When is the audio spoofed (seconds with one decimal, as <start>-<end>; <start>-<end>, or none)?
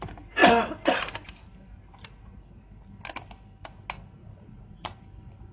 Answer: 4.2-4.9